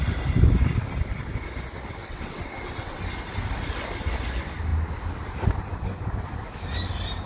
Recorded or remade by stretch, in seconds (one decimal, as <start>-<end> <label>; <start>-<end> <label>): 0.0-2.0 recorded; 2.0-3.0 remade; 3.0-7.3 recorded